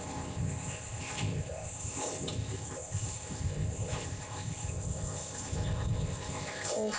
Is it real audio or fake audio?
fake